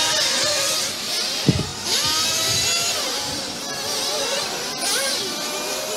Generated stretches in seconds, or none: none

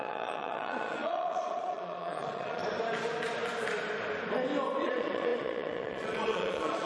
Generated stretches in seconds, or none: 0.0-2.6 (vocoder, Vocos); 4.8-6.9